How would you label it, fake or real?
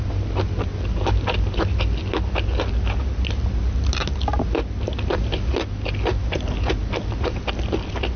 real